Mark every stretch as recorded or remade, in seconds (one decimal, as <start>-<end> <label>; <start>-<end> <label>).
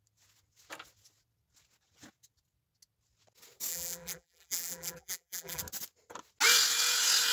0.0-3.7 recorded; 3.7-5.6 remade; 5.6-7.3 recorded